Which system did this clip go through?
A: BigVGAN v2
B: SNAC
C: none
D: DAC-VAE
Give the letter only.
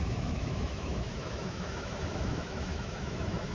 D